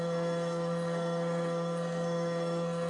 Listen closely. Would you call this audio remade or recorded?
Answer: remade